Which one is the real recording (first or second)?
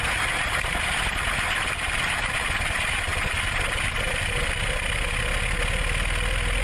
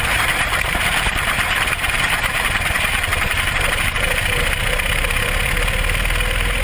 first